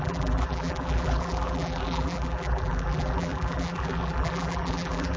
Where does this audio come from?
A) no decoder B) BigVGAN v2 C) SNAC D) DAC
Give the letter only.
B